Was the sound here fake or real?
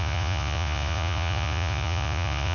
fake